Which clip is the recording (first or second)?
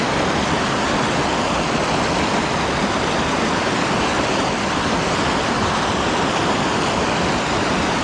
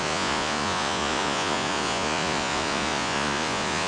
first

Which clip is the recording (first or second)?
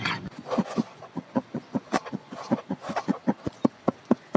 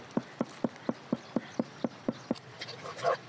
second